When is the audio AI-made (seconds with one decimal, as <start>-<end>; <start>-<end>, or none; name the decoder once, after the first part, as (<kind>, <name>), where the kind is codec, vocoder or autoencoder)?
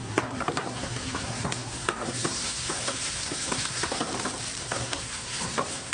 0.0-4.1 (codec, SNAC); 4.6-5.9